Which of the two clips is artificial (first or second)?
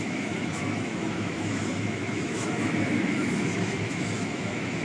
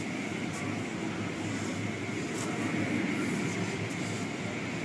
first